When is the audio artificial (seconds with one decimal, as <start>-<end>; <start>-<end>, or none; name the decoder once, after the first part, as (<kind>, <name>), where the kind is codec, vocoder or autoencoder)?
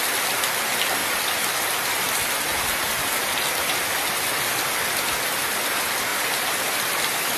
0.0-1.0 (vocoder, BigVGAN v2); 5.4-7.4